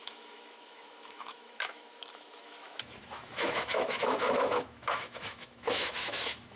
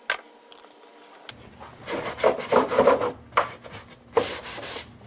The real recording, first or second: second